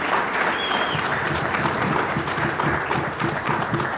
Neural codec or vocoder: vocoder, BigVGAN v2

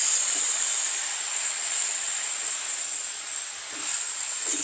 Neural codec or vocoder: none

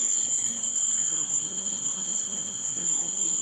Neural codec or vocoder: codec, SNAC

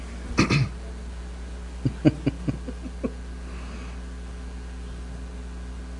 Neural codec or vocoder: none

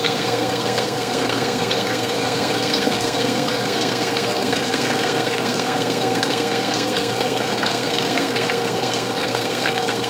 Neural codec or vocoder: codec, SNAC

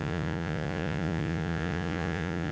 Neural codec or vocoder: vocoder, Vocos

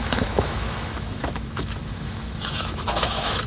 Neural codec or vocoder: autoencoder, DAC-VAE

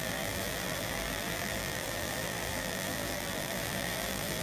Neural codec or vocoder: vocoder, BigVGAN v2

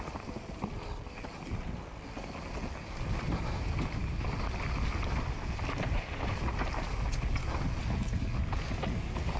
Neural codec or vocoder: none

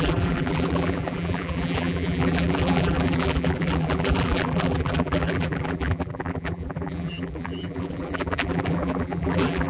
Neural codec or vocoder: vocoder, BigVGAN v2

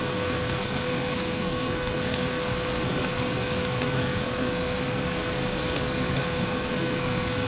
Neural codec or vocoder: codec, SNAC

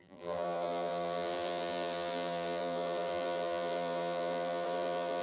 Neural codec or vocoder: vocoder, BigVGAN v2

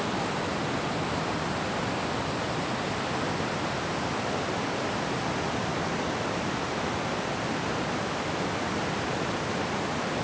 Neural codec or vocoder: none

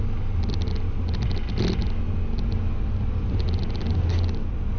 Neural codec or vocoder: none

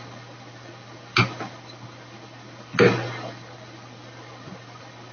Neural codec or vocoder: none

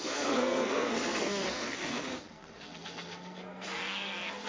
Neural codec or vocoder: codec, SNAC